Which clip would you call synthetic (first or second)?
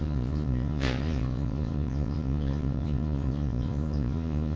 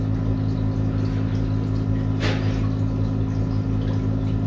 first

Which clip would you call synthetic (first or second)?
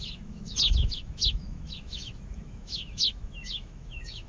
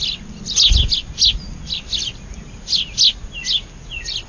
first